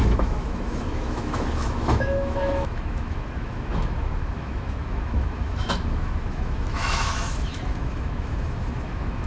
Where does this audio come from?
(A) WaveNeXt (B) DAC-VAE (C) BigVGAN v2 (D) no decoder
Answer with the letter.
B